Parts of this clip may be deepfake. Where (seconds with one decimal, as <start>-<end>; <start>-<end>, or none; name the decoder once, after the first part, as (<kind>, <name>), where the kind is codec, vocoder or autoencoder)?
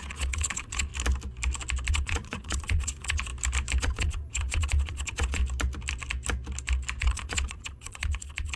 0.0-0.9 (vocoder, Vocos); 1.9-3.3; 3.8-5.4; 7.0-8.6